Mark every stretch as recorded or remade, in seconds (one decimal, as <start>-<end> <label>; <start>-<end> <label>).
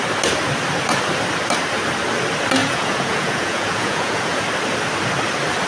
0.0-2.6 recorded; 2.6-4.4 remade; 4.4-5.7 recorded